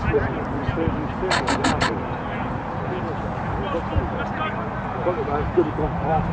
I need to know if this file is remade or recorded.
recorded